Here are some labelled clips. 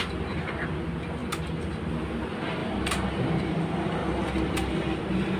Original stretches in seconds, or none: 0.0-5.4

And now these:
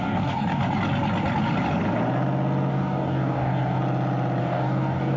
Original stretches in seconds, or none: 0.6-2.7; 3.8-4.4

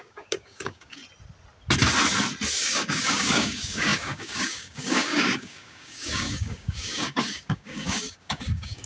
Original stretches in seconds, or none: 1.0-2.5

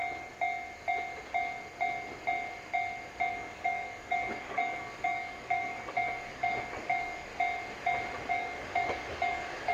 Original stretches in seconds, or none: 0.0-3.3; 7.3-8.3

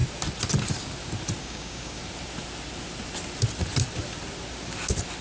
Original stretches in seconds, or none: 0.0-1.4; 2.0-5.2